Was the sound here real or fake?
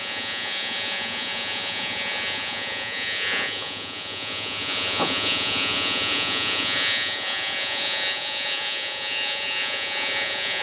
fake